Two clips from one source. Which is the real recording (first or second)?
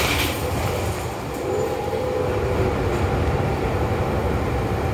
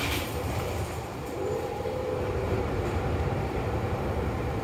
first